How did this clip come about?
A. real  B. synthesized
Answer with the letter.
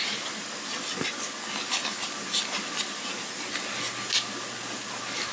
A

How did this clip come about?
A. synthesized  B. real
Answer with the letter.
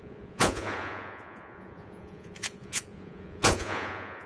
A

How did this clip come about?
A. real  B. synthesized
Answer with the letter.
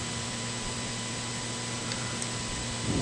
A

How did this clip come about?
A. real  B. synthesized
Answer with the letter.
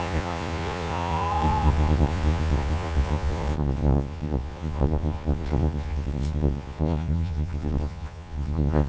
B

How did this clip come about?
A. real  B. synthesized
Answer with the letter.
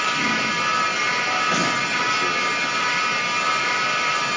A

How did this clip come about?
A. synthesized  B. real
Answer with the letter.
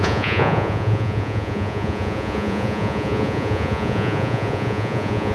A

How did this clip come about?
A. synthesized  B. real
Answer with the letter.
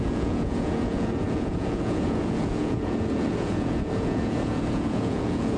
A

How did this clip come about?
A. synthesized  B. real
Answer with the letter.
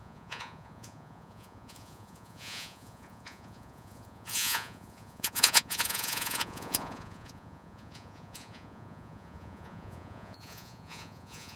A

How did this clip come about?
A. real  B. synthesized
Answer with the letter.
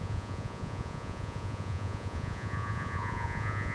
B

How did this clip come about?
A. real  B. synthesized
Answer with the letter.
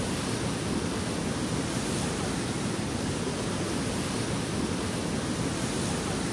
A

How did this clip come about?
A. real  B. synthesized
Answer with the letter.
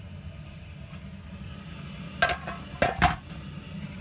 A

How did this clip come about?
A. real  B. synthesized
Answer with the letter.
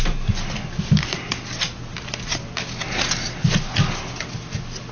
A